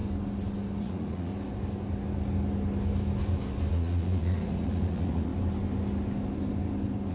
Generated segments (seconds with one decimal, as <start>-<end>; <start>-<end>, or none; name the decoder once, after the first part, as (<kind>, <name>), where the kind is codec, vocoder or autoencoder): 0.8-1.3 (vocoder, Vocos); 3.7-5.3